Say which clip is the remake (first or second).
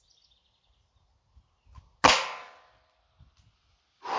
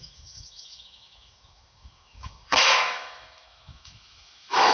second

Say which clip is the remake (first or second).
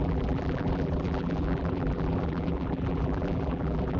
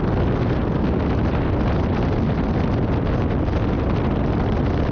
first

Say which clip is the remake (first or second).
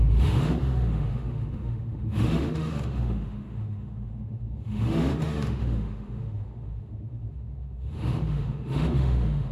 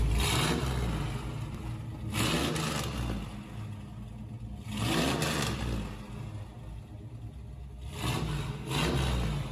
first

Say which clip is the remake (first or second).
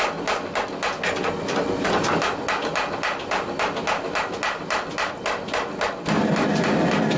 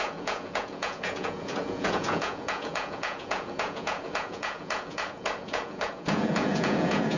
second